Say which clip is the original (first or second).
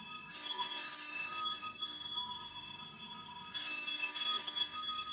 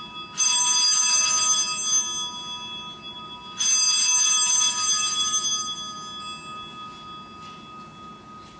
second